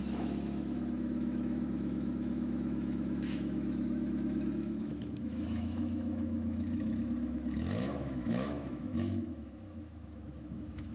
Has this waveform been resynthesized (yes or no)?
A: yes